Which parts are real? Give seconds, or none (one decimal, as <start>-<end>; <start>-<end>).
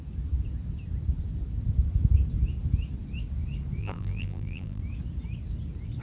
0.0-3.8; 4.8-6.0